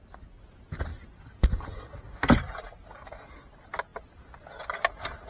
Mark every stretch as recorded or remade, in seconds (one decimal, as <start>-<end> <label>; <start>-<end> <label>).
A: 0.0-0.9 recorded; 0.9-3.5 remade; 3.5-5.3 recorded